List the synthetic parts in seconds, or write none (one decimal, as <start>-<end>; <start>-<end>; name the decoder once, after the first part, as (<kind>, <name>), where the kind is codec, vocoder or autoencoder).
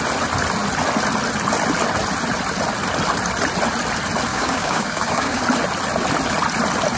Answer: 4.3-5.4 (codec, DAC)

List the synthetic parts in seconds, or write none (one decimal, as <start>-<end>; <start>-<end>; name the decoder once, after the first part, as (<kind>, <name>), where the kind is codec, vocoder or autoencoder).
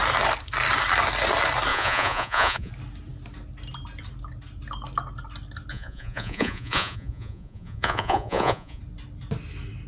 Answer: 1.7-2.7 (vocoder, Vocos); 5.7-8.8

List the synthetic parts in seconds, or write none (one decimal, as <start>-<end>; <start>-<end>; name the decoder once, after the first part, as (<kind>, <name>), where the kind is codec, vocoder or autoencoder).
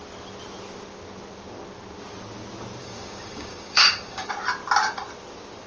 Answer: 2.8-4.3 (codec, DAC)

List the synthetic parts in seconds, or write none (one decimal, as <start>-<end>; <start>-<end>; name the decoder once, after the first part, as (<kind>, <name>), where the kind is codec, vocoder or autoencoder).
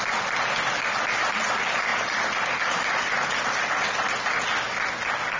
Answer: 1.9-4.4 (vocoder, BigVGAN v2)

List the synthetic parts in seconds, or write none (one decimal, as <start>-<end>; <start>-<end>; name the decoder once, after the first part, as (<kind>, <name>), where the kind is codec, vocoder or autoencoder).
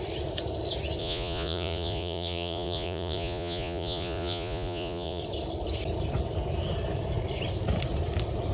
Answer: 1.0-5.2 (vocoder, Vocos)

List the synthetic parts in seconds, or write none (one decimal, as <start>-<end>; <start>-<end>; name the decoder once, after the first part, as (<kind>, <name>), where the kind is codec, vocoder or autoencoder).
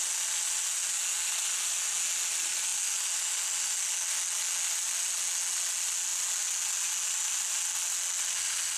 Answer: none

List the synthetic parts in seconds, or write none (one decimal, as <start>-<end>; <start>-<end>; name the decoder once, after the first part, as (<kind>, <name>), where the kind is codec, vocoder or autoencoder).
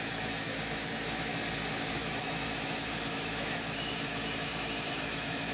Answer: 0.0-1.3 (autoencoder, DAC-VAE); 1.9-5.5